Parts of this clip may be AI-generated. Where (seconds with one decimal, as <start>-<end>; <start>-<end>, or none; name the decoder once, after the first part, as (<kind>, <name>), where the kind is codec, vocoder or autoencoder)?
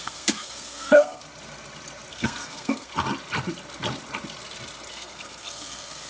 0.0-1.2 (codec, SNAC); 2.1-2.9; 4.9-6.1